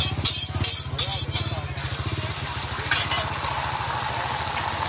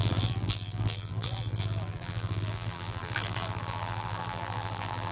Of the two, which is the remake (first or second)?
second